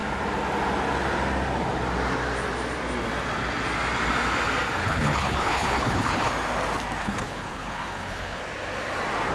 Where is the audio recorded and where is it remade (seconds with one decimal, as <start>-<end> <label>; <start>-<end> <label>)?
0.0-4.8 recorded; 4.8-6.3 remade; 6.3-7.0 recorded; 7.0-8.4 remade; 8.4-9.3 recorded

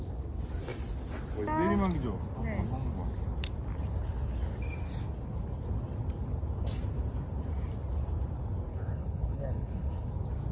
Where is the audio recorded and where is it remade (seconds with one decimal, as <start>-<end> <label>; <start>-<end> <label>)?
0.0-8.7 recorded; 8.7-10.1 remade; 10.1-10.5 recorded

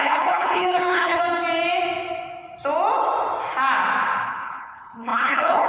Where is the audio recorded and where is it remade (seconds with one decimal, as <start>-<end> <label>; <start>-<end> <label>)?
0.0-1.2 remade; 1.2-4.3 recorded; 4.3-5.7 remade

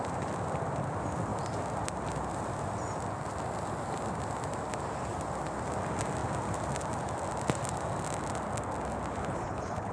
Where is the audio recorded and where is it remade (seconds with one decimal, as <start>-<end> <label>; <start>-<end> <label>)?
0.0-9.2 recorded; 9.2-9.9 remade

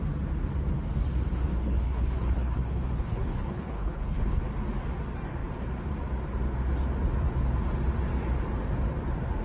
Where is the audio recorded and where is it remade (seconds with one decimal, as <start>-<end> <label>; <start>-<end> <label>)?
0.0-1.5 recorded; 1.5-4.4 remade; 4.4-9.4 recorded

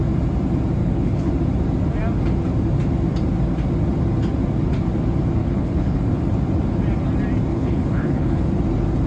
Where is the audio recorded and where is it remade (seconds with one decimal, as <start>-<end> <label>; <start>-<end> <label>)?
0.0-0.8 recorded; 0.8-1.3 remade; 1.3-5.4 recorded; 5.4-6.1 remade; 6.1-7.5 recorded; 7.5-8.5 remade; 8.5-9.1 recorded

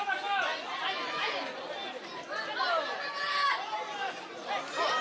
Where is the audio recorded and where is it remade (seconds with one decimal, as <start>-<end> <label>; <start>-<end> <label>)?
0.0-5.0 recorded

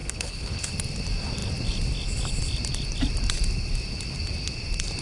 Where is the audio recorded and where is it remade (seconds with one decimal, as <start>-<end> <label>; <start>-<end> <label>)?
0.0-0.7 remade; 0.7-5.0 recorded